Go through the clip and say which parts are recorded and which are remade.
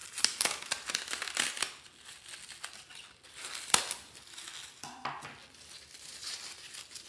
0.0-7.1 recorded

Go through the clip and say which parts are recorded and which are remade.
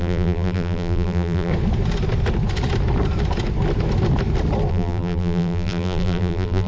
0.0-1.5 remade; 1.5-4.7 recorded; 4.7-6.7 remade